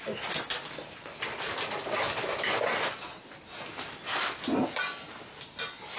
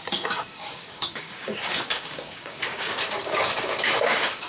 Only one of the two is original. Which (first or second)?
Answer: first